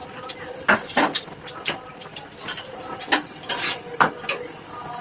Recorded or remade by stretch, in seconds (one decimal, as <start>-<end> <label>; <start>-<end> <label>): 0.0-5.0 recorded

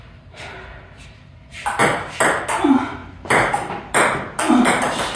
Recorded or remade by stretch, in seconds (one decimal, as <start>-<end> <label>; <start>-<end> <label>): 0.0-5.2 recorded

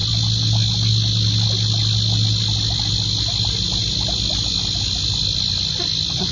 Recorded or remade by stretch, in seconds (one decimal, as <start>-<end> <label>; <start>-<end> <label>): 0.0-6.3 recorded

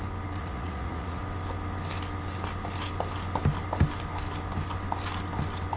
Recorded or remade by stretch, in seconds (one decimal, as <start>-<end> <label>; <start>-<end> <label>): 0.0-0.4 recorded; 0.4-1.2 remade; 1.2-5.8 recorded

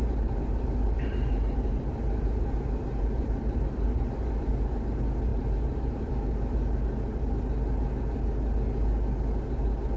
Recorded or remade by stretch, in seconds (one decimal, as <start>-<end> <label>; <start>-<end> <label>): 0.0-4.5 remade; 4.5-5.3 recorded; 5.3-6.1 remade; 6.1-10.0 recorded

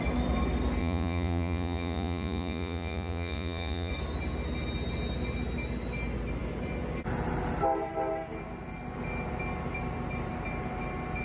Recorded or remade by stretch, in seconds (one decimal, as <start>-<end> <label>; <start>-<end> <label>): 0.0-0.8 recorded; 0.8-3.9 remade; 3.9-11.2 recorded

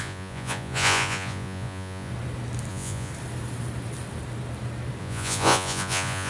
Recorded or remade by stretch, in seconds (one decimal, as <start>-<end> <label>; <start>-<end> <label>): 0.0-2.1 remade; 2.1-2.7 recorded; 2.7-3.1 remade; 3.1-5.0 recorded; 5.0-6.3 remade